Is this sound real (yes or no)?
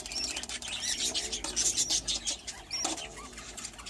yes